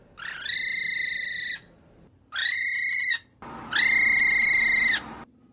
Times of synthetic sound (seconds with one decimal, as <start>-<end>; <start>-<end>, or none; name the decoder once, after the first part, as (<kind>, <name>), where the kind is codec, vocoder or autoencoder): none